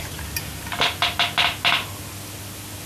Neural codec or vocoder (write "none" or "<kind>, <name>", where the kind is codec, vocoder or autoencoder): none